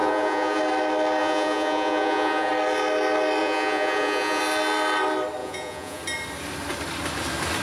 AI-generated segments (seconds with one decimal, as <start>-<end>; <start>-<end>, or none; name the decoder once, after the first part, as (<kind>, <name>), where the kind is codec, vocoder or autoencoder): 0.0-0.6 (vocoder, Vocos); 1.2-2.5; 3.4-4.4; 5.4-6.0